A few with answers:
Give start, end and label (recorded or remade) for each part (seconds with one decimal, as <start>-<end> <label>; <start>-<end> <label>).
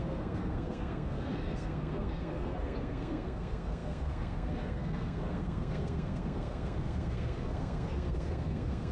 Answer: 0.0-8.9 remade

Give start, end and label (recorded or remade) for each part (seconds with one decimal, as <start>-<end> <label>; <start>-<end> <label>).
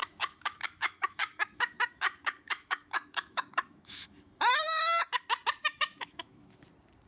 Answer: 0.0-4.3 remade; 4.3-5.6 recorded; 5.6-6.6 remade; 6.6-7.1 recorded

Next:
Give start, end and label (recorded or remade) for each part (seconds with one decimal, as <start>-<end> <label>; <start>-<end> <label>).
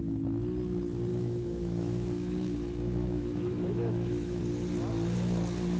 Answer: 0.0-1.1 recorded; 1.1-4.4 remade; 4.4-5.8 recorded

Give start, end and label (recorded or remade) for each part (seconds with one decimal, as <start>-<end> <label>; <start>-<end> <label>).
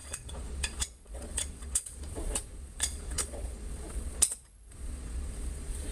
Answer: 0.0-5.9 remade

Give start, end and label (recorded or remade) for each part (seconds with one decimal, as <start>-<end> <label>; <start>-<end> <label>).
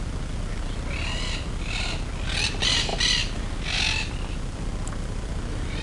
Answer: 0.0-5.8 recorded